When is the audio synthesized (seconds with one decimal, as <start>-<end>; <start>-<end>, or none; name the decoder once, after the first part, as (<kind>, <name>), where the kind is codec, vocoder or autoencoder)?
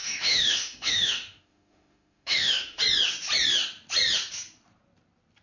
0.0-2.8 (autoencoder, DAC-VAE)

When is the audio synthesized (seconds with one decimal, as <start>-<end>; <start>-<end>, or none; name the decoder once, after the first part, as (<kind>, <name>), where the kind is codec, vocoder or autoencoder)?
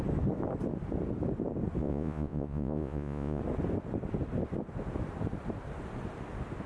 1.8-3.4 (vocoder, Vocos)